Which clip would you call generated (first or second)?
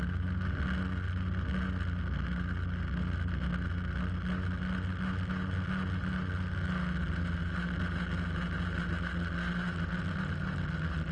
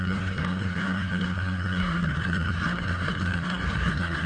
second